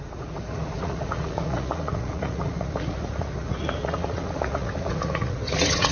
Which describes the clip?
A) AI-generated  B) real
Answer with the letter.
A